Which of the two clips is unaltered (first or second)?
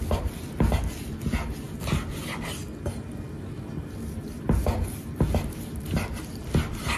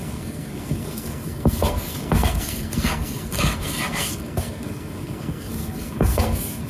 first